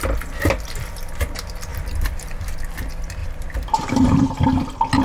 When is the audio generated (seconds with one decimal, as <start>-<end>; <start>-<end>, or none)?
1.7-2.5; 3.2-4.2